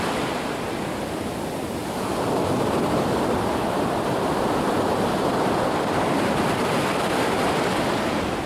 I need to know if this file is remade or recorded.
remade